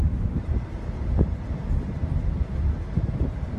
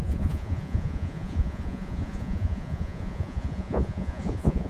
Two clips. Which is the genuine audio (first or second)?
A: first